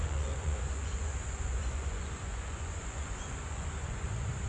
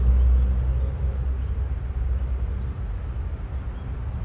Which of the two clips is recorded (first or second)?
second